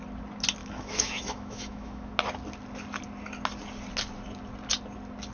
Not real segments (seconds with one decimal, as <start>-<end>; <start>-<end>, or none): 0.6-2.1